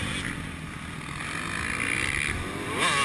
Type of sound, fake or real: real